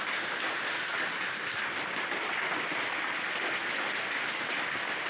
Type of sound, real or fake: real